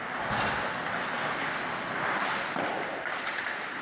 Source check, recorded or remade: recorded